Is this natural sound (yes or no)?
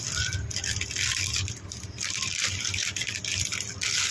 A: yes